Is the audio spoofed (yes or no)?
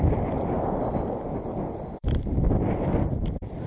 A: no